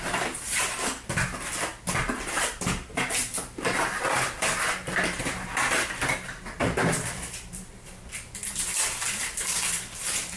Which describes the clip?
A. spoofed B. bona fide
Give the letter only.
B